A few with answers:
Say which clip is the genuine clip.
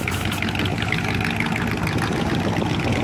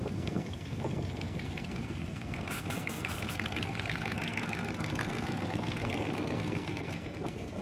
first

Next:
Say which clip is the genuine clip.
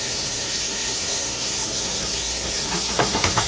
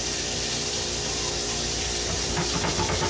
second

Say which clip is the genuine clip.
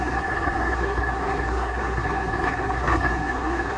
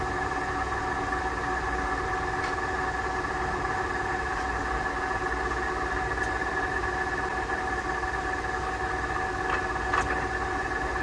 second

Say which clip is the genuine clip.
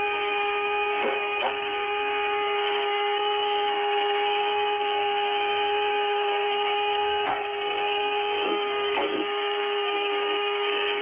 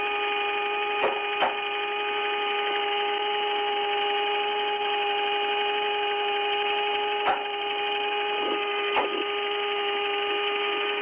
second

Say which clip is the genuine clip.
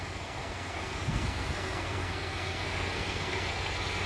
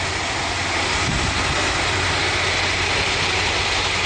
second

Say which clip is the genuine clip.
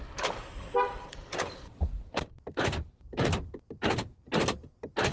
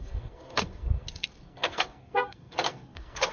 first